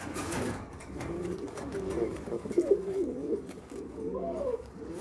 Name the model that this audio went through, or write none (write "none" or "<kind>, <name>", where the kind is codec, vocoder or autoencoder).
codec, DAC